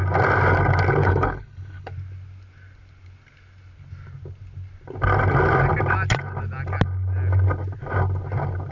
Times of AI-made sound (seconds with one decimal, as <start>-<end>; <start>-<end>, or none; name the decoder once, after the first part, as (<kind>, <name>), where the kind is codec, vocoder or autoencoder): 1.0-1.9 (codec, HILCodec)